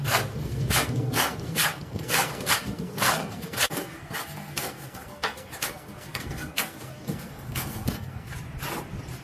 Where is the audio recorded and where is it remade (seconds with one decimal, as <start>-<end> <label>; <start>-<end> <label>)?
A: 0.0-8.3 remade; 8.3-9.2 recorded